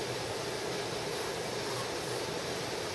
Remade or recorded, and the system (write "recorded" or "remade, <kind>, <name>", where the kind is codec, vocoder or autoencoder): remade, vocoder, BigVGAN v2